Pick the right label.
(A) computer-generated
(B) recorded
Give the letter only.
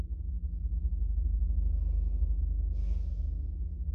B